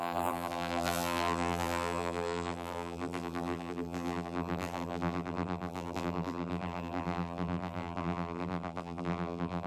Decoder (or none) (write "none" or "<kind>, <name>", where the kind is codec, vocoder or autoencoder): vocoder, BigVGAN v2